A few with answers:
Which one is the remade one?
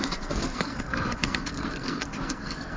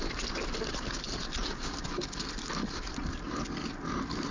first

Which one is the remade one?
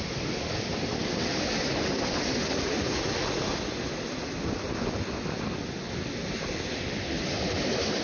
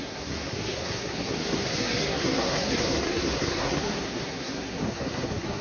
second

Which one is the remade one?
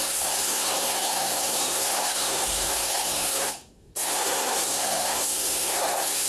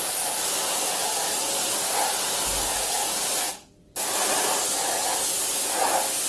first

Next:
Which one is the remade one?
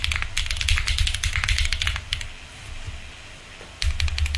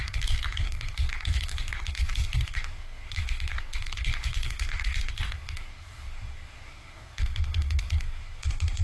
second